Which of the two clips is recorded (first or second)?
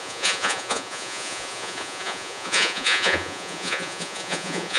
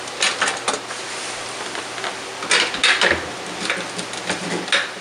second